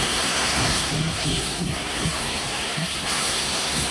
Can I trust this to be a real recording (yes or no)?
no